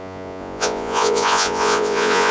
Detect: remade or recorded remade